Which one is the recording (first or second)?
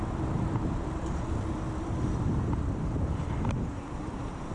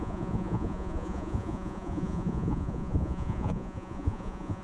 first